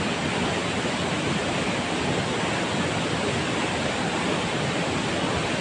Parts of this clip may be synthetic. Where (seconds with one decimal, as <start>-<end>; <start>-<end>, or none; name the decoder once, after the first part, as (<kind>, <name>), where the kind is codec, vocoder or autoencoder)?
none